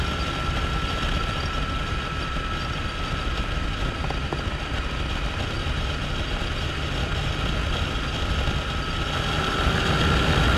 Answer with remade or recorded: recorded